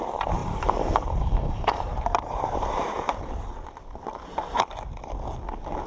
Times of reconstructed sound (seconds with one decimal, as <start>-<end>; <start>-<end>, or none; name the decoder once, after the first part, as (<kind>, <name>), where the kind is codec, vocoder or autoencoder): 0.4-3.4 (vocoder, BigVGAN v2)